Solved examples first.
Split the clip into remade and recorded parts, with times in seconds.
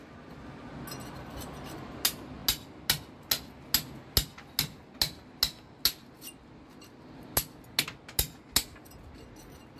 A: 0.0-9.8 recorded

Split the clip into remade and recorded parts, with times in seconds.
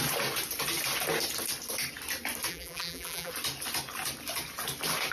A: 0.0-2.5 recorded; 2.5-3.3 remade; 3.3-5.1 recorded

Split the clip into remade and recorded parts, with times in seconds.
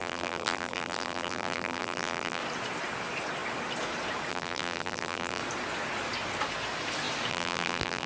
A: 0.0-2.4 remade; 2.4-4.3 recorded; 4.3-5.4 remade; 5.4-7.3 recorded; 7.3-8.1 remade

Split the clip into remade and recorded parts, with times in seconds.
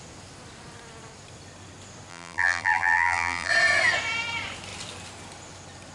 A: 0.0-2.1 recorded; 2.1-3.5 remade; 3.5-5.9 recorded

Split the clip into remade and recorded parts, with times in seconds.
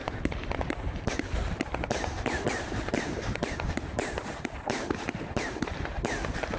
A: 0.0-1.0 remade; 1.0-1.7 recorded; 1.7-5.7 remade; 5.7-6.6 recorded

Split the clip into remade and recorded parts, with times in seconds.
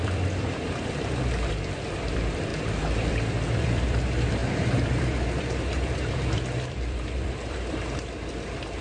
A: 0.0-8.8 remade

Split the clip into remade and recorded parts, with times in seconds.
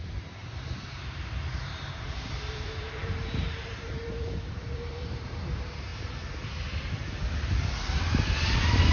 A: 0.0-5.9 remade; 5.9-8.9 recorded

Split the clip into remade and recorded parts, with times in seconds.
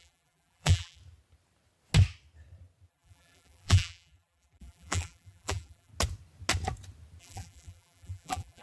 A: 0.0-1.0 remade; 1.0-2.9 recorded; 2.9-5.9 remade; 5.9-7.2 recorded; 7.2-8.6 remade